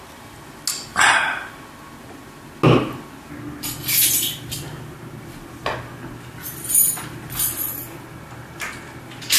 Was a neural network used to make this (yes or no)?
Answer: no